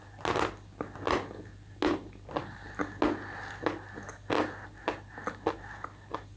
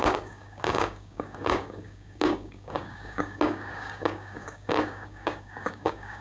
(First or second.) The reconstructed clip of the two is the second